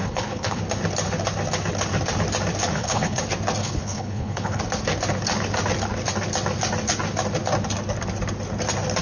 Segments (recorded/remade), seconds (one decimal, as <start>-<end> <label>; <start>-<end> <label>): 0.0-0.6 remade; 0.6-2.6 recorded; 2.6-3.2 remade; 3.2-3.6 recorded; 3.6-4.6 remade; 4.6-9.0 recorded

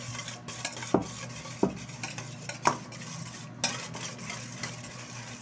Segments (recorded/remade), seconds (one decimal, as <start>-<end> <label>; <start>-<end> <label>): 0.0-5.4 recorded